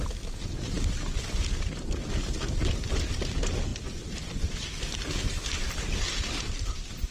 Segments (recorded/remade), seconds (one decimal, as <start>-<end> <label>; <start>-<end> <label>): 0.0-7.1 recorded

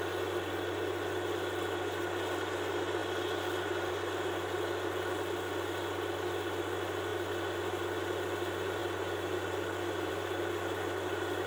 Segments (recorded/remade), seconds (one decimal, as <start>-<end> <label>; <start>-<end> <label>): 0.0-11.5 recorded

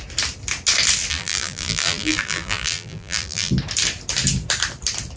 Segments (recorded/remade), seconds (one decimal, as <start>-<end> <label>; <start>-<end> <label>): 0.0-1.1 recorded; 1.1-3.5 remade; 3.5-5.2 recorded

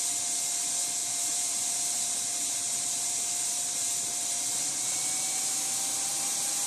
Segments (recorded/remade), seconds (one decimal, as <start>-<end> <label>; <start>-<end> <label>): 0.0-1.0 recorded; 1.0-5.0 remade; 5.0-6.7 recorded

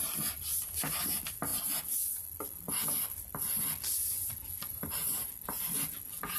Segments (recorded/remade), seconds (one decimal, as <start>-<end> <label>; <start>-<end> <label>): 0.0-0.5 recorded; 0.5-1.1 remade; 1.1-4.7 recorded; 4.7-5.3 remade; 5.3-6.4 recorded

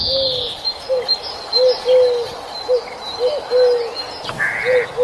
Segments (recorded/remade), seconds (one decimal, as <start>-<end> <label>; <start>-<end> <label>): 0.0-2.3 recorded; 2.3-3.1 remade; 3.1-5.0 recorded

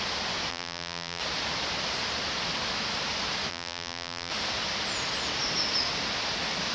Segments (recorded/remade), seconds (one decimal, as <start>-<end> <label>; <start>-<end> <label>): 0.0-0.5 recorded; 0.5-1.2 remade; 1.2-3.5 recorded; 3.5-4.3 remade; 4.3-6.7 recorded